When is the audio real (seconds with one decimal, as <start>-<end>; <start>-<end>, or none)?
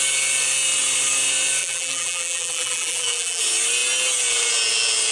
0.0-1.6; 3.4-5.1